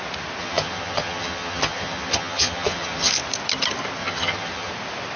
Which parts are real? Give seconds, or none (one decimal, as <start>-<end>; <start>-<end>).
0.0-0.4; 3.1-4.0; 4.7-5.2